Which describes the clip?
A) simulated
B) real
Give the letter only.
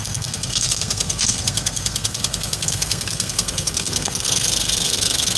A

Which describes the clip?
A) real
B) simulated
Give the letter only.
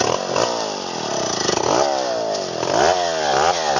A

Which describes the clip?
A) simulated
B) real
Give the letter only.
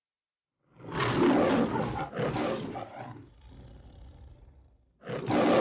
B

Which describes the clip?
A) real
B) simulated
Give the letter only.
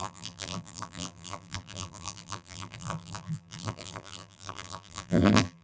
B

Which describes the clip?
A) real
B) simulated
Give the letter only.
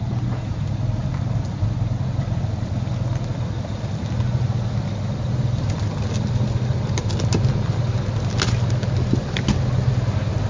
A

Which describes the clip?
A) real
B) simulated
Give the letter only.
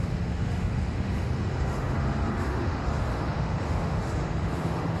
B